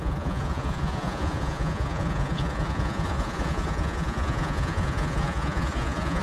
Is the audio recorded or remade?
remade